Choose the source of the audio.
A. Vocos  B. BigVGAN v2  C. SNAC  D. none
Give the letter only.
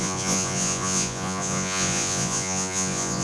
A